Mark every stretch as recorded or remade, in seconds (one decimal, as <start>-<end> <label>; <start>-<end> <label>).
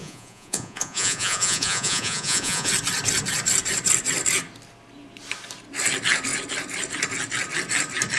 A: 0.0-2.7 remade; 2.7-8.2 recorded